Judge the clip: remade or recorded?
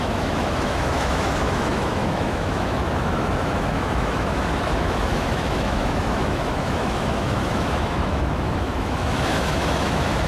remade